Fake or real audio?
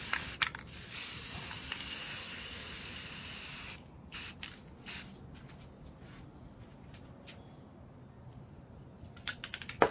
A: real